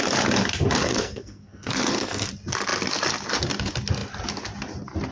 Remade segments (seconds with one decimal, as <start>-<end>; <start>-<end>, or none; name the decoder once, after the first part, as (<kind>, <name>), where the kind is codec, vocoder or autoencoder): 0.8-2.3 (codec, SNAC)